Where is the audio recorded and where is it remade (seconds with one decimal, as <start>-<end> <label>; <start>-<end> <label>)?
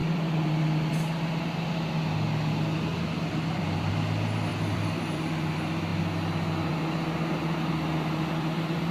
0.0-0.9 remade; 0.9-2.9 recorded; 2.9-3.9 remade; 3.9-4.5 recorded; 4.5-5.2 remade; 5.2-8.9 recorded